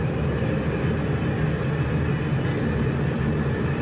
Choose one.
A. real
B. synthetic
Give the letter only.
A